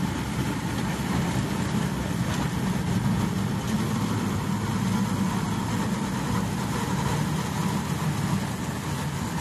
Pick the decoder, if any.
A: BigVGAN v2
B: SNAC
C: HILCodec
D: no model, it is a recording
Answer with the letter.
D